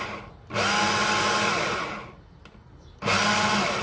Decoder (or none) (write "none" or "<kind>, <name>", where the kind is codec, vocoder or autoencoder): none